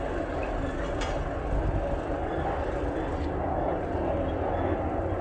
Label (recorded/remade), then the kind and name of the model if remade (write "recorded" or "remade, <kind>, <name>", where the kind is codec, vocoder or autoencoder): recorded